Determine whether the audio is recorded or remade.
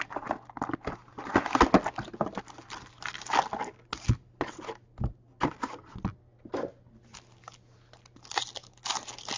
recorded